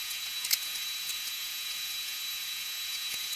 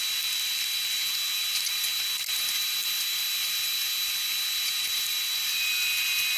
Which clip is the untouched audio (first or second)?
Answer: second